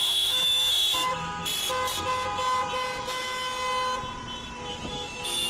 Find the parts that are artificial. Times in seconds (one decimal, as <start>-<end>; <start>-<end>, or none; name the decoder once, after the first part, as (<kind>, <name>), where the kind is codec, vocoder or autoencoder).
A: 0.0-1.4 (autoencoder, DAC-VAE); 4.7-5.5